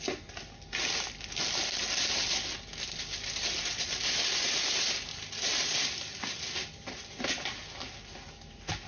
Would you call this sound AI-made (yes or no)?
no